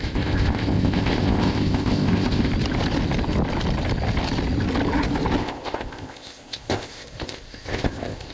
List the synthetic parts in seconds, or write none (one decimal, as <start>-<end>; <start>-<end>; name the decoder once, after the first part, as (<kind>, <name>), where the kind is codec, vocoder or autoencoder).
0.0-2.5 (codec, ZipCodec); 5.4-8.3